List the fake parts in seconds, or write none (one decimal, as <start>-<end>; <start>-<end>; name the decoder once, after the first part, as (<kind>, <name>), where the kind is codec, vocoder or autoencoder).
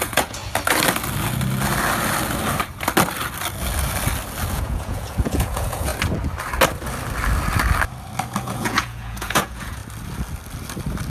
0.0-0.4 (vocoder, Vocos); 4.5-5.9; 8.4-9.8